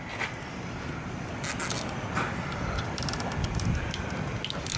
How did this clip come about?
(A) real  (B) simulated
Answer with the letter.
A